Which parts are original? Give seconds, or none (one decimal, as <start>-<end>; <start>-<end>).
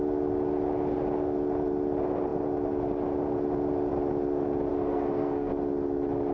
0.0-4.7; 5.5-6.3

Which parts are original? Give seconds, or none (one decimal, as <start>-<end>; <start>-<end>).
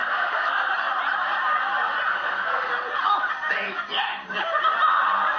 0.7-2.1; 2.7-5.4